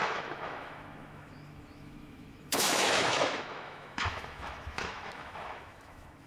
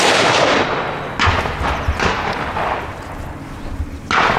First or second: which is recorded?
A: second